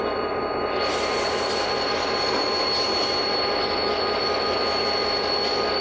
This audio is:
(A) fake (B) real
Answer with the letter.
B